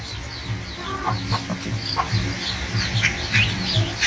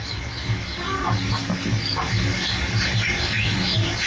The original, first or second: first